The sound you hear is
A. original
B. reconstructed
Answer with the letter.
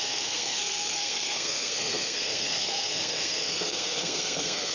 B